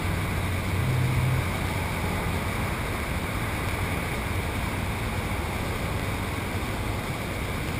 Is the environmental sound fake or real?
real